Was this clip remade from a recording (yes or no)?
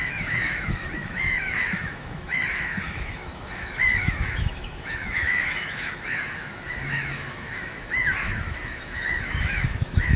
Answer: yes